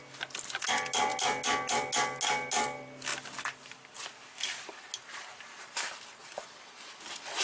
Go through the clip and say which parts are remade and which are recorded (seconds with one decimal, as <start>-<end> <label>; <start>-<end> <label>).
0.0-7.4 recorded